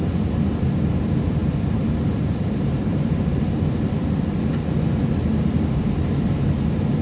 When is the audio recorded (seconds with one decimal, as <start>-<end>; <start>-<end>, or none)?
0.0-7.0